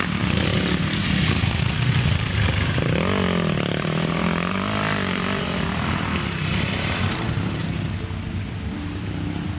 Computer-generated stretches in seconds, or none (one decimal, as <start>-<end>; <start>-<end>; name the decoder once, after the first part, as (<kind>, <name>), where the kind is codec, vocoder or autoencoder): 0.0-0.5 (vocoder, BigVGAN v2); 4.5-7.6; 8.5-9.6